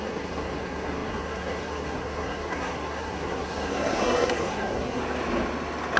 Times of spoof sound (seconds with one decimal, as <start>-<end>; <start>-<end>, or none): 0.0-5.0

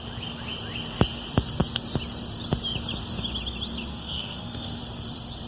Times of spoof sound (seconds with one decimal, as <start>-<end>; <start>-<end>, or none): 3.9-4.8

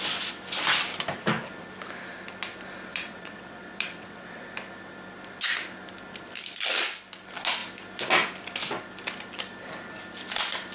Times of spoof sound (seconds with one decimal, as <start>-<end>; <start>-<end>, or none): 2.9-4.4